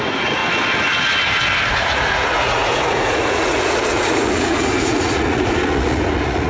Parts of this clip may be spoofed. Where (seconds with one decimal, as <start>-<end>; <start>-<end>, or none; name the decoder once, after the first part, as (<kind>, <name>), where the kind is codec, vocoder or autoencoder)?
0.0-0.4 (vocoder, Vocos); 1.7-6.5